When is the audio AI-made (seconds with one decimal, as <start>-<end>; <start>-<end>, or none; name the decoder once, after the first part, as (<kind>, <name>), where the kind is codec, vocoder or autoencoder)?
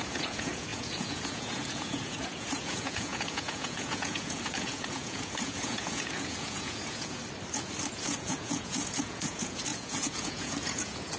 0.0-7.2 (vocoder, Vocos); 7.9-11.2